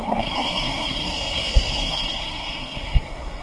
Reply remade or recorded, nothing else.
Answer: remade